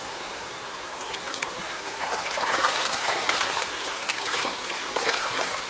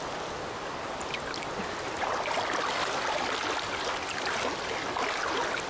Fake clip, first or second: first